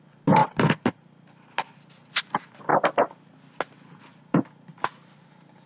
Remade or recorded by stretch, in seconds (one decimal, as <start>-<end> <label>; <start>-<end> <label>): 0.0-5.7 recorded